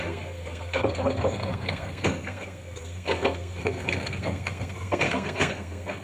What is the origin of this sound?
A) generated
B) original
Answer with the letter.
A